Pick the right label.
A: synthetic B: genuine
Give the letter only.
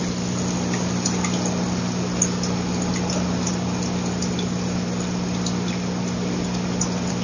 B